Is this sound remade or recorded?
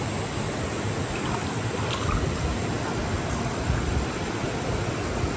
recorded